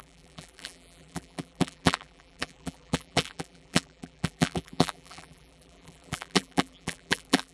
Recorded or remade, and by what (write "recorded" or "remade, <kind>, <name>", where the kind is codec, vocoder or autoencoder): remade, vocoder, BigVGAN v2